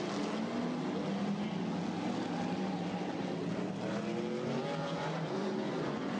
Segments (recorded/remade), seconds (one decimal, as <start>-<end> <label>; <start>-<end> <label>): 0.0-4.8 recorded; 4.8-6.2 remade